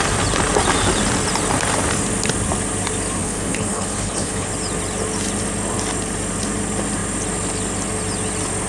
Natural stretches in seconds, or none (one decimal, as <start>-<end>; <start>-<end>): 0.0-3.2; 4.5-8.7

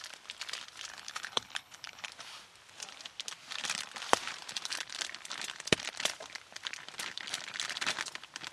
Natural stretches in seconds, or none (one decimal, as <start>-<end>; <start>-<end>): 0.0-0.9; 2.1-8.5

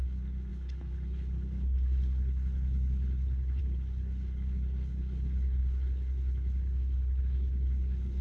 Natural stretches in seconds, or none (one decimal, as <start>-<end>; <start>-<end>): none

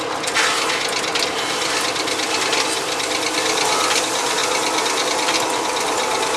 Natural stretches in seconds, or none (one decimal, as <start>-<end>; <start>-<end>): 0.0-6.4

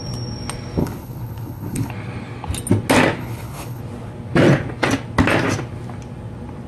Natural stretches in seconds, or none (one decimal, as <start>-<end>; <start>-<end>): 0.0-0.8; 1.9-3.2; 3.8-6.7

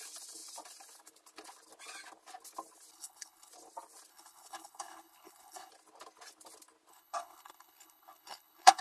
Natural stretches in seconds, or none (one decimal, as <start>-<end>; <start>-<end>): 0.0-2.9; 3.5-4.1; 5.7-6.9

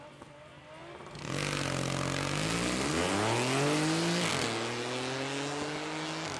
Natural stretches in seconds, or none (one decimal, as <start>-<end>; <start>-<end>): 0.0-6.4